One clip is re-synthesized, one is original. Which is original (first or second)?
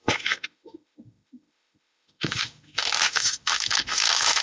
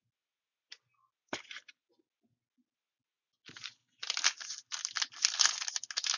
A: second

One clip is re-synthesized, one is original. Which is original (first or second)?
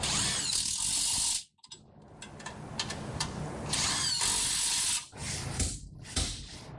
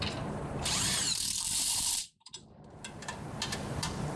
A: first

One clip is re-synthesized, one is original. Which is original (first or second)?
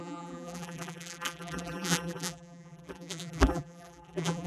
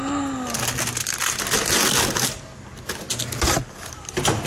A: second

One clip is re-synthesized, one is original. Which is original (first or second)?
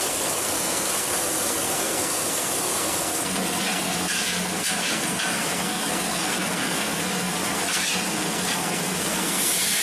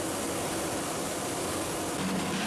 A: second